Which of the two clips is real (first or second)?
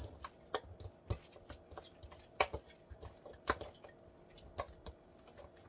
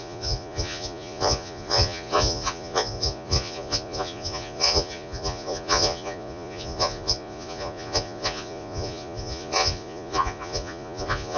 first